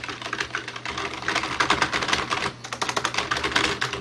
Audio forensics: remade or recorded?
recorded